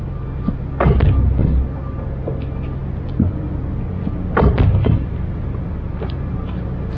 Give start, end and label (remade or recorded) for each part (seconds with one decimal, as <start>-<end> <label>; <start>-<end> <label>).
0.0-1.4 recorded; 1.4-2.2 remade; 2.2-2.8 recorded; 2.8-6.3 remade; 6.3-7.0 recorded